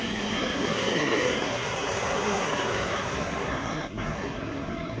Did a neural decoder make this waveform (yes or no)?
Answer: yes